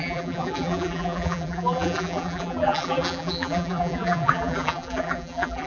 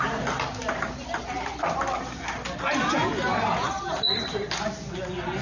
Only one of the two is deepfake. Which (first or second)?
first